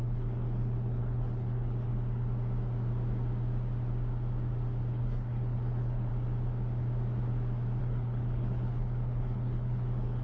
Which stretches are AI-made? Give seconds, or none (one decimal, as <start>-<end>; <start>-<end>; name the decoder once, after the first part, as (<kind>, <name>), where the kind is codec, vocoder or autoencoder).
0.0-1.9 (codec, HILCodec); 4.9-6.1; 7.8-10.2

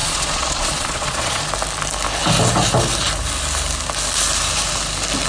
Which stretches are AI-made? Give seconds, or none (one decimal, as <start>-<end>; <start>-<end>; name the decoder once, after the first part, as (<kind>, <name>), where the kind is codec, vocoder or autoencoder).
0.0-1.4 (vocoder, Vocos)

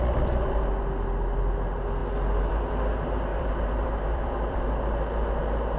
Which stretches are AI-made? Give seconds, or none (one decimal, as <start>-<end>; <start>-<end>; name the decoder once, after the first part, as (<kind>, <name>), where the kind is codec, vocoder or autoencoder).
3.3-4.6 (vocoder, BigVGAN v2)

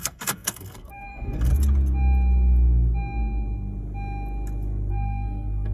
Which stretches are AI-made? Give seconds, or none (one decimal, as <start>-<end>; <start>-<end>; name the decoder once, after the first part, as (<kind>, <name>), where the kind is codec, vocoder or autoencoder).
0.0-1.5 (codec, SNAC); 4.9-5.7

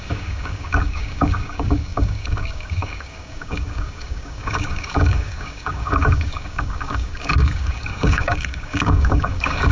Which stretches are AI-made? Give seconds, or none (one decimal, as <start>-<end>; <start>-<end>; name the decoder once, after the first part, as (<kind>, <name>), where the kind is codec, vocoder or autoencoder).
0.0-9.7 (codec, DAC)

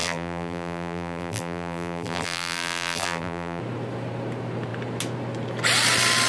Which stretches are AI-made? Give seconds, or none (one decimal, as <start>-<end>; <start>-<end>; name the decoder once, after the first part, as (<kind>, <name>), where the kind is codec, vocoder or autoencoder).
0.0-3.6 (vocoder, BigVGAN v2)

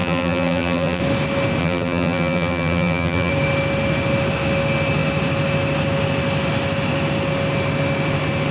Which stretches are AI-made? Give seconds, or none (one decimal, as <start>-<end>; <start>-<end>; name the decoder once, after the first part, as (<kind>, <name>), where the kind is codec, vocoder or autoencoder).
0.0-1.0 (vocoder, BigVGAN v2); 1.6-3.3